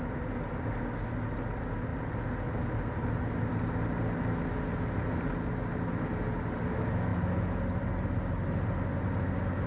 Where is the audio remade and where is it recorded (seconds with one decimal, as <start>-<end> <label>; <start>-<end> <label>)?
0.0-9.7 recorded